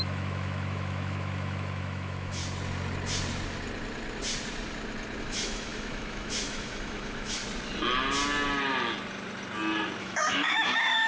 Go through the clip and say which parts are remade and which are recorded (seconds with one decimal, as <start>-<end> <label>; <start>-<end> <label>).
0.0-2.4 remade; 2.4-5.2 recorded; 5.2-7.4 remade; 7.4-10.0 recorded; 10.0-11.1 remade